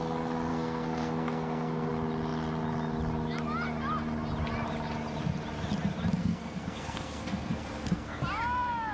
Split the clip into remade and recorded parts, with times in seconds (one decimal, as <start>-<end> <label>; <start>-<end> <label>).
0.0-0.5 recorded; 0.5-1.9 remade; 1.9-6.2 recorded; 6.2-8.2 remade; 8.2-8.9 recorded